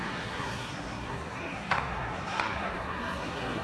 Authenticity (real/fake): fake